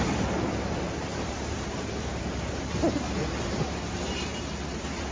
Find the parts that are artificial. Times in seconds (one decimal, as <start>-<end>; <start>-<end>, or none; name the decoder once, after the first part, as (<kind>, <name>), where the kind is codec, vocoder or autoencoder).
1.1-2.6 (vocoder, BigVGAN v2)